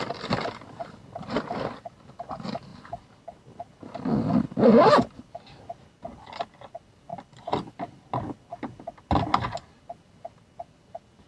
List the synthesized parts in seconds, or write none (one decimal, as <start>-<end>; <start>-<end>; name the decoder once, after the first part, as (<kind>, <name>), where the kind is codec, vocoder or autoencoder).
none